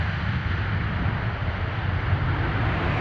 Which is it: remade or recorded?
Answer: recorded